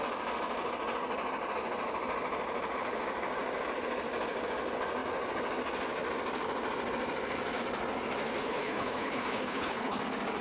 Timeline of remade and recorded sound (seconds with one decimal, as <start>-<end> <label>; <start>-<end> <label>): 0.0-8.4 recorded; 8.4-10.0 remade; 10.0-10.4 recorded